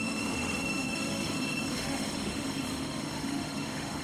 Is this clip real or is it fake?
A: fake